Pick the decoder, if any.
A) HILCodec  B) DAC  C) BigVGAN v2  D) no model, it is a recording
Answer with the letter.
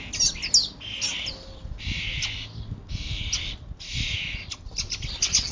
D